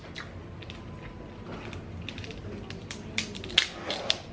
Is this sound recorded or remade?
recorded